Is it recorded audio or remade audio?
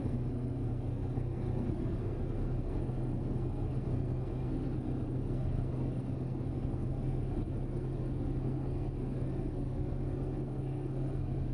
remade